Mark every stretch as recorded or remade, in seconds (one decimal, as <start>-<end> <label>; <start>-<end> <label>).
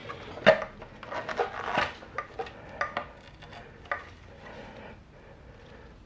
0.0-6.1 recorded